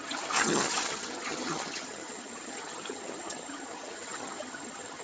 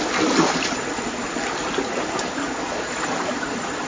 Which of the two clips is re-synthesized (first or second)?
first